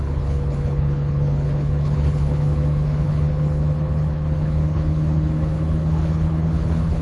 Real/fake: fake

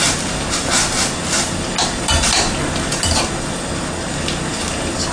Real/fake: real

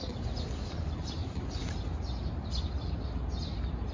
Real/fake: real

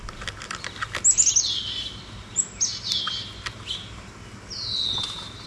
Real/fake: real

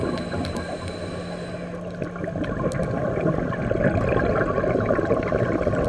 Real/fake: real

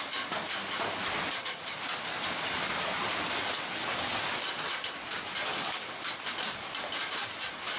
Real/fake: real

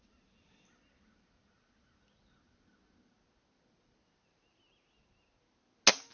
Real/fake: real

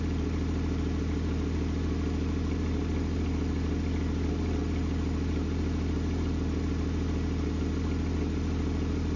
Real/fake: real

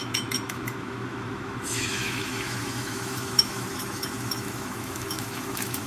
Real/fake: fake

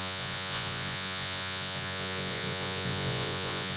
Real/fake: fake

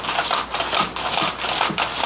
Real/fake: real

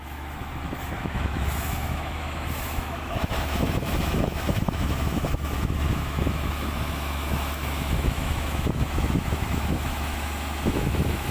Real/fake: fake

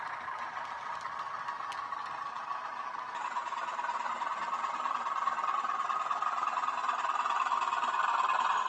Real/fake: real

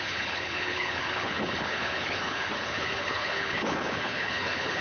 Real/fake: fake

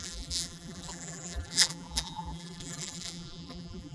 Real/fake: fake